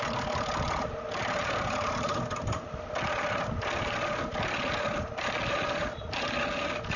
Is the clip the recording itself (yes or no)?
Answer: yes